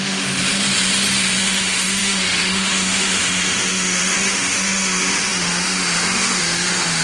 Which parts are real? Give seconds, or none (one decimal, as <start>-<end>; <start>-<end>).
0.4-1.4